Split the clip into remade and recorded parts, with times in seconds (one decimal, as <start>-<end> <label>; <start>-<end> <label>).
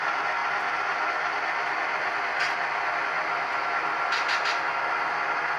0.0-5.6 recorded